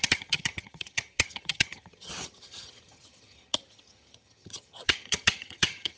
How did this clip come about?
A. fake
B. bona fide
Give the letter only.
A